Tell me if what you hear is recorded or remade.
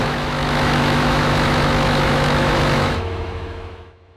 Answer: remade